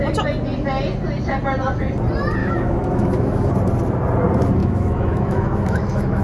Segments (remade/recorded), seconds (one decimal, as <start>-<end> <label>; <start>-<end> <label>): 0.0-2.4 recorded; 2.4-3.5 remade; 3.5-4.6 recorded; 4.6-6.2 remade